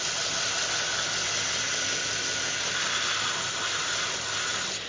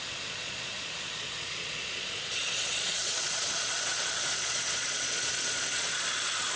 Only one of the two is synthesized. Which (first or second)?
second